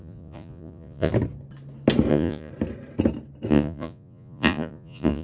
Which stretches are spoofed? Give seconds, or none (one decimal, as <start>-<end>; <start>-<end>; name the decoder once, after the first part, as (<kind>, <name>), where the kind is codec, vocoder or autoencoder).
0.0-1.1 (vocoder, Vocos); 2.1-2.5; 3.5-5.2